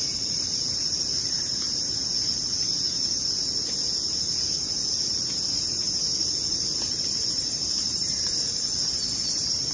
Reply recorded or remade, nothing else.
remade